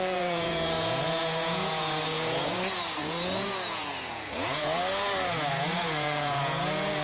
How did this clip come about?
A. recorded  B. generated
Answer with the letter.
B